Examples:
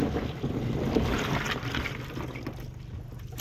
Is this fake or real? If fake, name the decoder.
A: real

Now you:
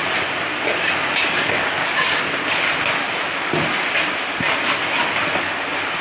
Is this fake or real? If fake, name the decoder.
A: real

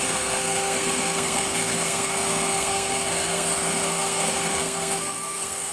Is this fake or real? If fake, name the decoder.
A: fake, codec, SNAC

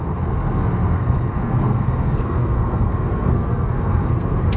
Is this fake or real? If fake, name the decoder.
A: fake, codec, SNAC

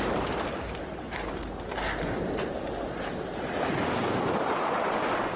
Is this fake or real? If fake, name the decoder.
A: real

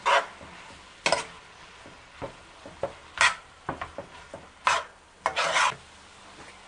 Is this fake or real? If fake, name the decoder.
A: real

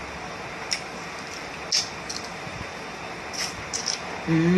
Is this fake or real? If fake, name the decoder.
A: real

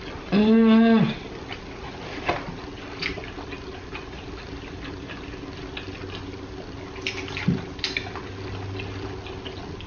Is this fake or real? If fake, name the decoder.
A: real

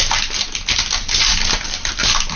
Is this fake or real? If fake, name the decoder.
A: real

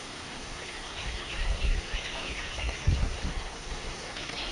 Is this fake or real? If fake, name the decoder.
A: fake, codec, SNAC